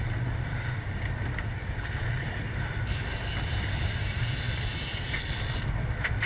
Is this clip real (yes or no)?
no